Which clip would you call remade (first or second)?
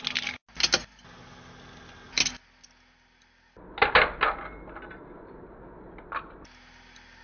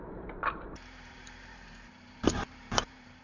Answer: second